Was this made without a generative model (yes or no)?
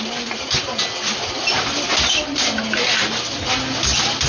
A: yes